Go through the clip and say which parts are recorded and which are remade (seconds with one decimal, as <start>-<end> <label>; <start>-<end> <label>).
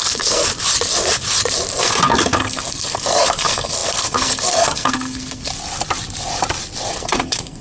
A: 0.0-0.5 remade; 0.5-1.8 recorded; 1.8-5.5 remade; 5.5-6.9 recorded; 6.9-7.6 remade